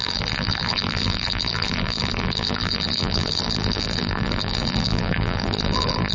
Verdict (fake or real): fake